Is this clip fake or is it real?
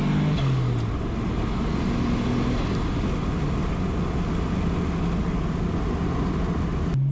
real